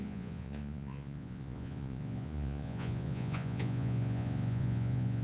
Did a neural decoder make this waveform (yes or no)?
yes